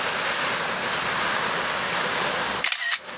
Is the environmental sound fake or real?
real